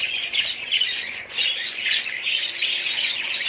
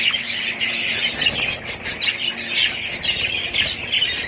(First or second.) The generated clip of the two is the first